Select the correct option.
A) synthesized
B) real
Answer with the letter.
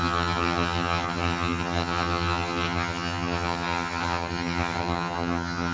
A